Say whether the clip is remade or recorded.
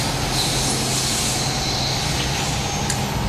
recorded